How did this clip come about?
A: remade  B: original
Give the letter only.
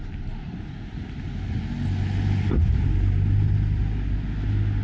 B